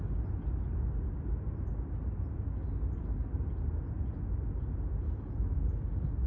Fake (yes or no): no